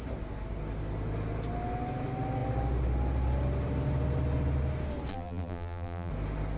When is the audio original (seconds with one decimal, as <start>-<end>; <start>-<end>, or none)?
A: 0.0-5.1; 6.1-6.6